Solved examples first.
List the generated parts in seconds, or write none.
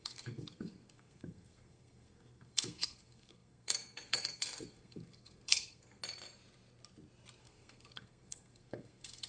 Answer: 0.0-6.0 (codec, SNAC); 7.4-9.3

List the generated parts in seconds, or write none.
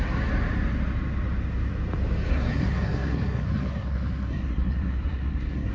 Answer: 2.3-5.7 (codec, SNAC)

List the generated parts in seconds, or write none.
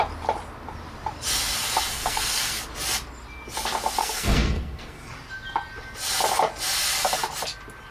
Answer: 1.9-2.6 (codec, SNAC); 4.0-5.1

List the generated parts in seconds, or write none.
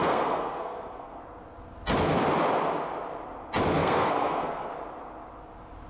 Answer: 0.0-1.2 (codec, SNAC); 3.8-4.7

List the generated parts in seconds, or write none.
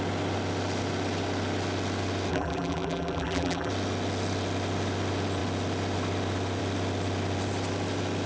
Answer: 2.3-3.7 (vocoder, BigVGAN v2)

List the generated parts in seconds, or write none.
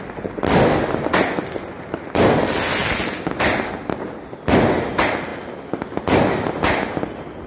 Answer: none